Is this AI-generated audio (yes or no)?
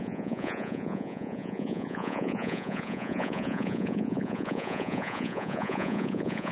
yes